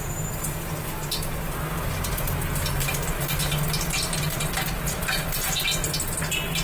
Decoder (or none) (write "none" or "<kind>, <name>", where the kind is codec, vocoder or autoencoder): none